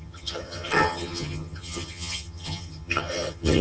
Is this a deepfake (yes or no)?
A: yes